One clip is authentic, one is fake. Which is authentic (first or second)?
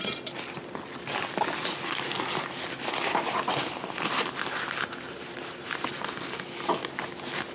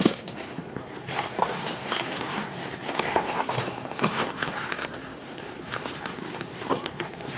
first